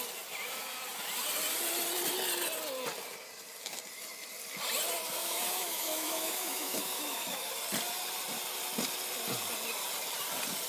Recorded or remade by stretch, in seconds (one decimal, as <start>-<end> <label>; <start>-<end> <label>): 0.0-5.2 recorded; 5.2-7.5 remade; 7.5-10.7 recorded